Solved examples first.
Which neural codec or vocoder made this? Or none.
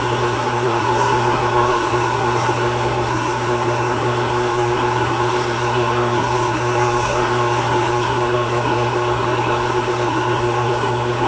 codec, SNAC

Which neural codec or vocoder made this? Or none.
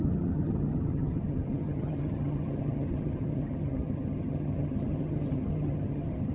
vocoder, HiFi-GAN